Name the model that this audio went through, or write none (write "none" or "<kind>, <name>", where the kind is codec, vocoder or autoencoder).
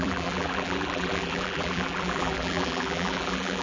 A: vocoder, BigVGAN v2